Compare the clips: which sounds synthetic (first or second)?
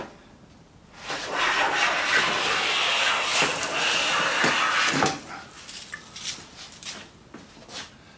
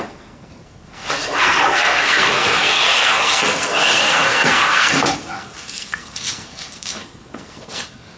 second